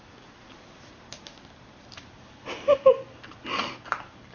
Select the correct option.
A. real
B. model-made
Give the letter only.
A